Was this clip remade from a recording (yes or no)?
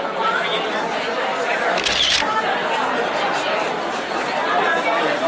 no